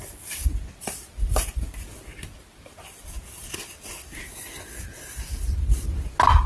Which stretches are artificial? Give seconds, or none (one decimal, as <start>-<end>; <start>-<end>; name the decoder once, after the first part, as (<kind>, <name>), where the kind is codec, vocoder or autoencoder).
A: none